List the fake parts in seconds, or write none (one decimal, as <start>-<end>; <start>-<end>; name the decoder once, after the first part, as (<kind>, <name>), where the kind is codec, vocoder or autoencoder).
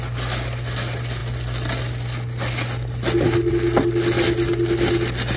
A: none